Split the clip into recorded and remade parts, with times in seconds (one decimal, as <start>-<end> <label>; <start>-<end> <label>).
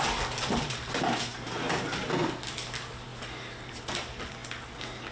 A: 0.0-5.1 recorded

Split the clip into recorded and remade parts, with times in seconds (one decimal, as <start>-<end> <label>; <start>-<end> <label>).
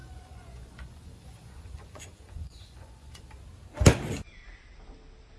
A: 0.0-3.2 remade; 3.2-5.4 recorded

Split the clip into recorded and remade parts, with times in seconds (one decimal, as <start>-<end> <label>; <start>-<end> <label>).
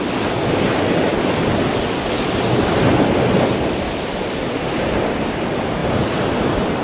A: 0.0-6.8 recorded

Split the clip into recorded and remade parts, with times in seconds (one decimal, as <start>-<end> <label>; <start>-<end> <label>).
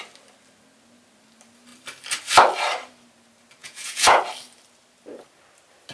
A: 0.0-3.6 recorded; 3.6-4.2 remade; 4.2-5.9 recorded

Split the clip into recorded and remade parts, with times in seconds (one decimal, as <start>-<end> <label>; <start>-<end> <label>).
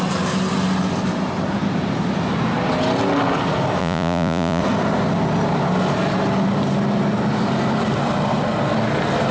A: 0.0-3.8 recorded; 3.8-4.6 remade; 4.6-9.3 recorded